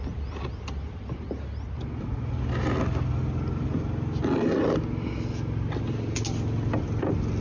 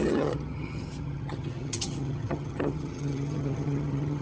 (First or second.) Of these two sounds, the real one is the first